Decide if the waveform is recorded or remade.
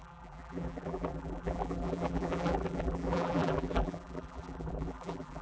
remade